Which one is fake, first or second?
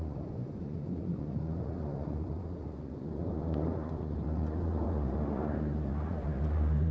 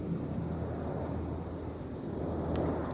first